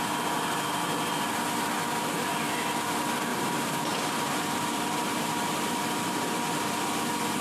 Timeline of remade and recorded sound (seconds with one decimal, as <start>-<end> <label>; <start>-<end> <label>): 0.0-3.3 recorded; 3.3-6.8 remade; 6.8-7.4 recorded